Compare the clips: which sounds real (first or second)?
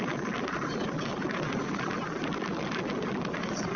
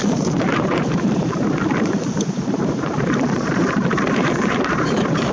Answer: first